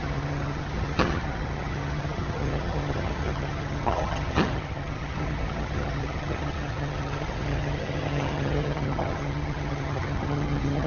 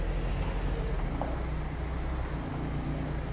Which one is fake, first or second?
first